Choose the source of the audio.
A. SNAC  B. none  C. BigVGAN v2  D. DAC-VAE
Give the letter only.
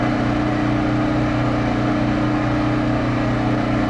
B